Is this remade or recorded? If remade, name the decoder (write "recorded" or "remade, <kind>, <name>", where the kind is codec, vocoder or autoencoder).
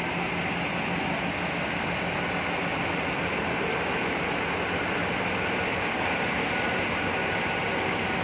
recorded